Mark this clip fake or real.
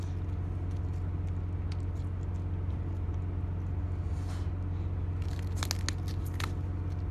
real